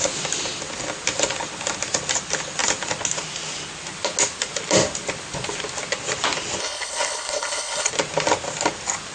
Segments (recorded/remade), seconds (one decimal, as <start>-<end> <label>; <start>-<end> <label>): 0.0-6.6 recorded; 6.6-7.9 remade; 7.9-9.1 recorded